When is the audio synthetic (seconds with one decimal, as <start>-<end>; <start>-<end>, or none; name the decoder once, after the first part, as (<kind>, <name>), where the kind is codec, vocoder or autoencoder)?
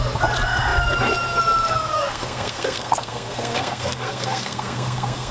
1.9-5.3 (codec, SNAC)